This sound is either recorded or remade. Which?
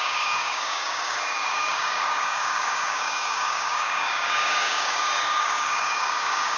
remade